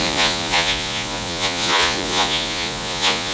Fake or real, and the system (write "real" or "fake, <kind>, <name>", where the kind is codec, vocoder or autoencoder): fake, vocoder, Vocos